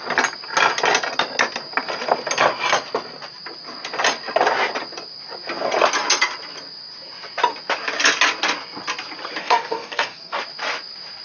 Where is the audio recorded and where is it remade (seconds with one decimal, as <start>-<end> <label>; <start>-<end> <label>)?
0.0-9.4 recorded; 9.4-10.4 remade; 10.4-11.2 recorded